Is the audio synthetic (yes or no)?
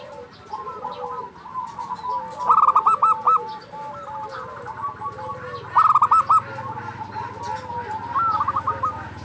no